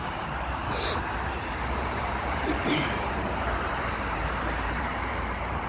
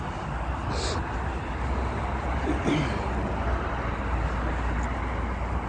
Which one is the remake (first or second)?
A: first